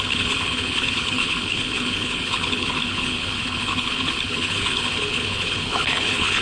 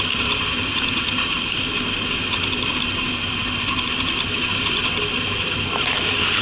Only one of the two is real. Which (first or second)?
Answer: second